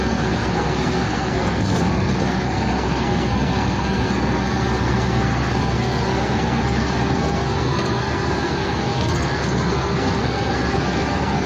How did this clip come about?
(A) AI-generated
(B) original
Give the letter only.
A